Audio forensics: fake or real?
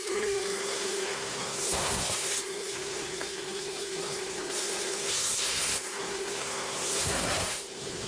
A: fake